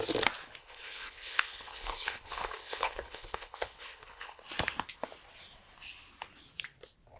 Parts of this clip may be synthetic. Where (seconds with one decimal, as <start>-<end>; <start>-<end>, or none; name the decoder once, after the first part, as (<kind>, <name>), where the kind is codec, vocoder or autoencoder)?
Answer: 0.6-4.4 (codec, HILCodec)